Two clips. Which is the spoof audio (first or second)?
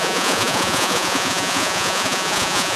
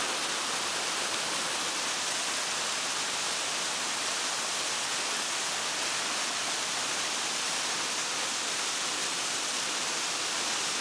first